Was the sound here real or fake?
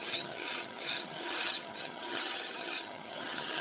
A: fake